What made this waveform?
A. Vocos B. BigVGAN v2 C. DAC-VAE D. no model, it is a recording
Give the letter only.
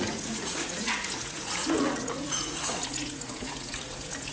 A